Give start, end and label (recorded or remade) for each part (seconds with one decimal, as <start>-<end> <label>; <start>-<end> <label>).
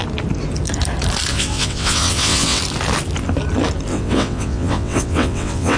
0.0-1.3 recorded; 1.3-2.6 remade; 2.6-3.9 recorded; 3.9-5.8 remade